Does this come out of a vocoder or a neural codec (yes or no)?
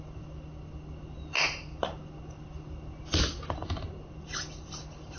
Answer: no